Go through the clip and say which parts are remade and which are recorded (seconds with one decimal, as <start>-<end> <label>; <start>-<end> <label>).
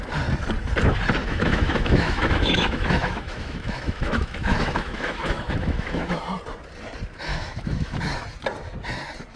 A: 0.0-1.2 recorded; 1.2-6.2 remade; 6.2-7.3 recorded; 7.3-8.0 remade; 8.0-9.4 recorded